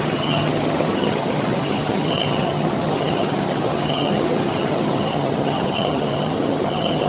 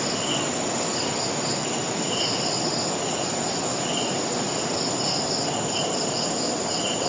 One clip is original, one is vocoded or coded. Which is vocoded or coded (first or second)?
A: first